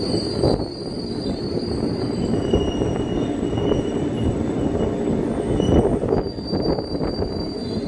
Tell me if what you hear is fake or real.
real